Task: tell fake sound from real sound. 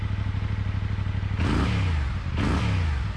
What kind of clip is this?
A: real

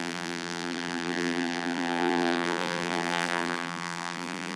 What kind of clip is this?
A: fake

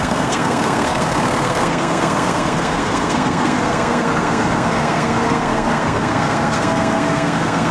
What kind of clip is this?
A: fake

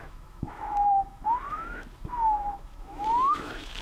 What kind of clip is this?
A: fake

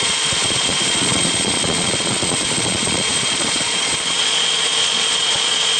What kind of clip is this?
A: fake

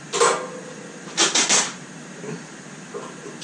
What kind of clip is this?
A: real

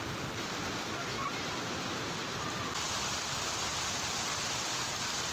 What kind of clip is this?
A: real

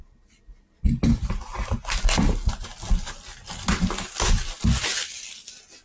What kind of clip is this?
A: real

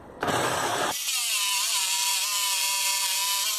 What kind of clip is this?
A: fake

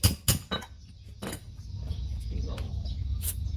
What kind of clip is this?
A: real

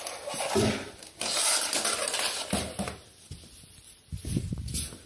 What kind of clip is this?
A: real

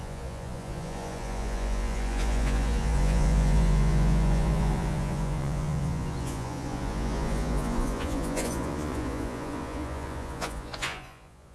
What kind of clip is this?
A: fake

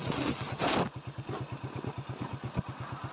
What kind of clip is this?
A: real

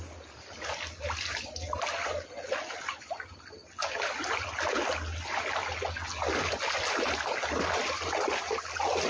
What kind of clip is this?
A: real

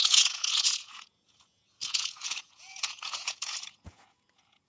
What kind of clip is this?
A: fake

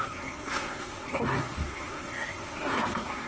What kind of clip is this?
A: fake